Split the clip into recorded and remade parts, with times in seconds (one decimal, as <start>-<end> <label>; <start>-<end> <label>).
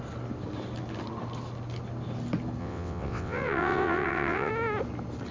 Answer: 0.0-2.6 recorded; 2.6-4.5 remade; 4.5-5.3 recorded